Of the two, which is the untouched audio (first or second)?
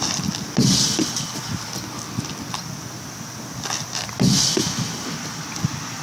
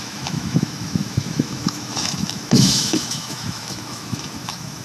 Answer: first